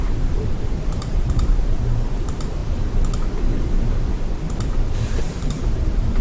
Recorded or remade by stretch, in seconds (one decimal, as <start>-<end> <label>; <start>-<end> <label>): 0.0-2.6 remade; 2.6-5.2 recorded; 5.2-6.2 remade